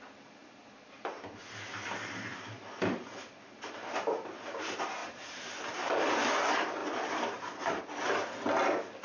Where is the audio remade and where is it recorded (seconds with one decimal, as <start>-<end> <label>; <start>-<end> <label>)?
0.0-2.3 recorded; 2.3-4.4 remade; 4.4-5.0 recorded; 5.0-6.3 remade; 6.3-6.8 recorded; 6.8-7.8 remade; 7.8-9.0 recorded